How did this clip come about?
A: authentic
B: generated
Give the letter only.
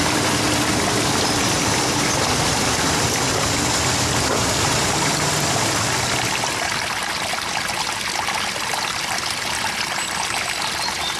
A